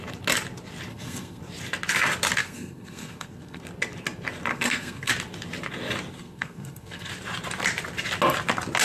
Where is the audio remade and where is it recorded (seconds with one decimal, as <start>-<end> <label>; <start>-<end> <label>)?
0.0-0.9 recorded; 0.9-1.4 remade; 1.4-2.4 recorded; 2.4-3.6 remade; 3.6-4.5 recorded; 4.5-5.1 remade; 5.1-6.1 recorded; 6.1-7.1 remade; 7.1-8.8 recorded